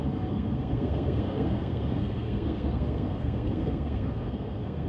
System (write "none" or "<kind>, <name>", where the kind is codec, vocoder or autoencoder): codec, SNAC